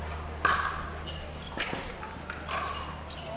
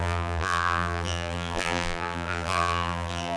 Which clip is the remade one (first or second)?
second